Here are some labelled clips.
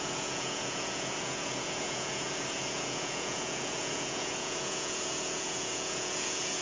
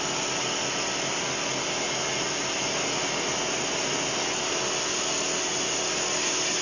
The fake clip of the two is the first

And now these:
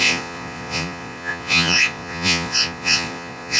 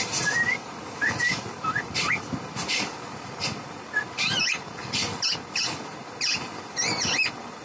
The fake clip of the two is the first